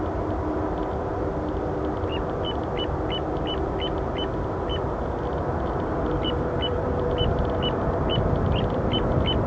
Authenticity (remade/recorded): recorded